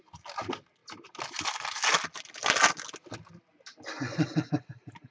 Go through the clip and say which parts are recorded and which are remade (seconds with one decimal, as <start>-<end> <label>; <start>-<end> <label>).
0.0-5.1 recorded